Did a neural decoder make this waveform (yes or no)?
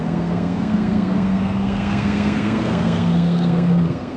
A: yes